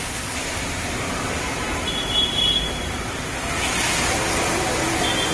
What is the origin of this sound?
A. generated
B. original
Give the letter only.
B